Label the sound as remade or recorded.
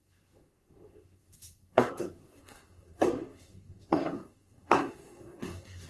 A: remade